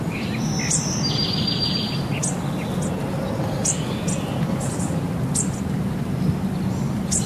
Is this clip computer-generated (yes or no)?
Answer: no